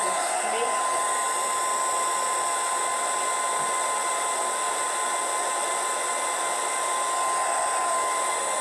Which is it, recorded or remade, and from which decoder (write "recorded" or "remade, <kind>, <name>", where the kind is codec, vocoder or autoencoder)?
recorded